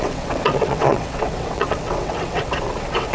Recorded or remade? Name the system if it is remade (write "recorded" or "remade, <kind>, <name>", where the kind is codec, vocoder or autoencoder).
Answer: remade, vocoder, WaveNeXt